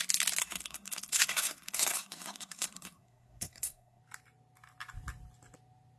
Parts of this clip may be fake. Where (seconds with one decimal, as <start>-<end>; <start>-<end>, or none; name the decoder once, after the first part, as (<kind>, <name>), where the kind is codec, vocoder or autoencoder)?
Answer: 0.4-4.0 (codec, SNAC)

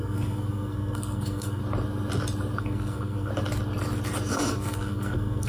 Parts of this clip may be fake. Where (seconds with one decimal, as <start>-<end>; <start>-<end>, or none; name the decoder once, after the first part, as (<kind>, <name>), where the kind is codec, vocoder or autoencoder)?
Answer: 0.0-1.6 (codec, SNAC); 2.6-3.3; 4.5-5.5